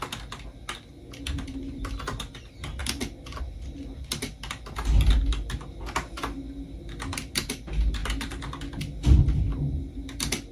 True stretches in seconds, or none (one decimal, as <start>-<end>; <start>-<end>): 0.0-10.5